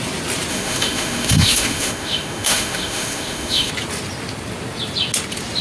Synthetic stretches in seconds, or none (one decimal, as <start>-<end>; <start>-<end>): 0.5-3.7